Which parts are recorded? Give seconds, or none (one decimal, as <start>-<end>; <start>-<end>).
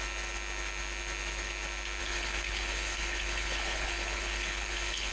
0.0-2.0